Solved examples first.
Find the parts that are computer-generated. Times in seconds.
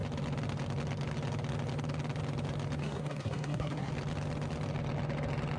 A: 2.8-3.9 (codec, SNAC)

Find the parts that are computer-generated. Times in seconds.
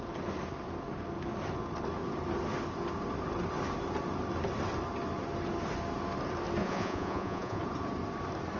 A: 6.6-7.6 (vocoder, Vocos)